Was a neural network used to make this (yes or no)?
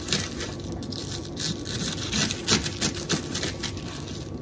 no